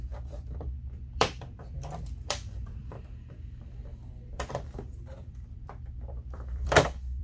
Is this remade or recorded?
remade